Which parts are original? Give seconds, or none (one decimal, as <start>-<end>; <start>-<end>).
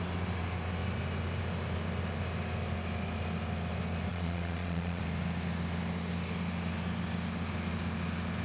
0.0-4.1; 5.0-8.4